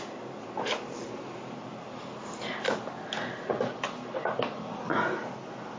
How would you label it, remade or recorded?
recorded